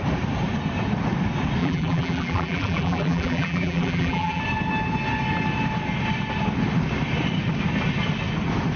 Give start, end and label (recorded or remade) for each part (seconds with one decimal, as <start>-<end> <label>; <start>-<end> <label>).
0.0-1.6 recorded; 1.6-4.4 remade; 4.4-8.8 recorded